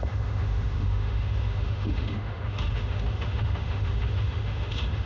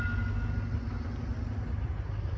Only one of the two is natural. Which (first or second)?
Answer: second